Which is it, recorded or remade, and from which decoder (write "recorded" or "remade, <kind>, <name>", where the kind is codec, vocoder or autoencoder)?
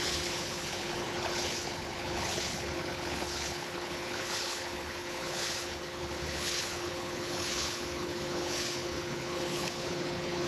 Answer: remade, codec, HILCodec